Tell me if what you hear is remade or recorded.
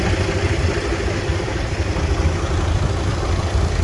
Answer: recorded